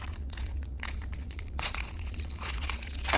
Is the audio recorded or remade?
remade